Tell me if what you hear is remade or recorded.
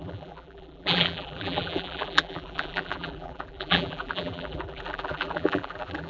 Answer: remade